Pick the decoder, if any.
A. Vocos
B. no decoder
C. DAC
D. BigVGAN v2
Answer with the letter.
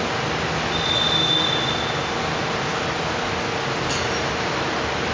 B